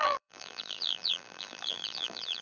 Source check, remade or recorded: remade